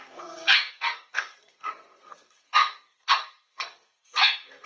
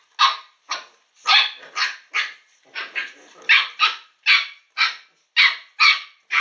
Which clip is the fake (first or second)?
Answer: first